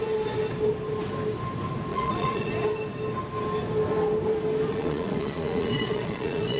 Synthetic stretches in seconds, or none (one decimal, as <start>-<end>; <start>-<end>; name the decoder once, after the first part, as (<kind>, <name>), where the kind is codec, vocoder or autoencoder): 1.9-2.5 (vocoder, Vocos); 4.7-6.6